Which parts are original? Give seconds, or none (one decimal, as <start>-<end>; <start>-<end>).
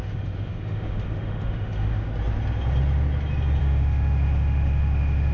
2.1-3.6